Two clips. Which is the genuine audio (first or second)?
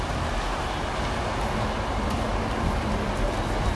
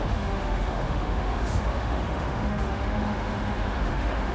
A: first